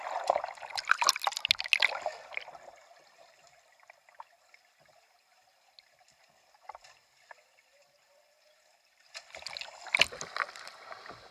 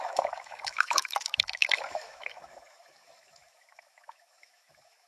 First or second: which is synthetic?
second